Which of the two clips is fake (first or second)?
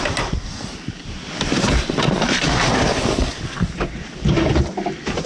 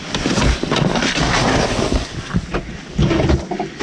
first